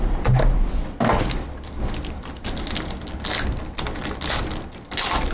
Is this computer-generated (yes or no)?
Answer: no